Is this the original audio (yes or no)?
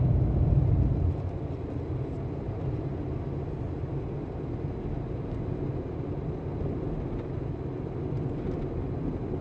yes